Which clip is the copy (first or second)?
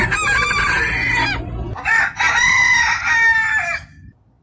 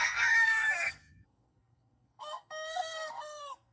second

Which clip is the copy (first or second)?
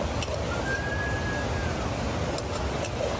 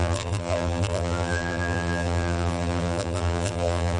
second